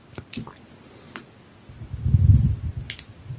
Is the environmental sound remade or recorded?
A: recorded